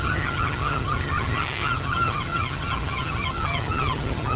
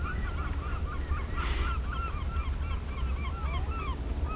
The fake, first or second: first